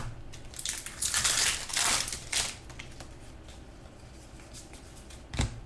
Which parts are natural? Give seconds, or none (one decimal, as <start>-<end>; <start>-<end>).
0.0-5.7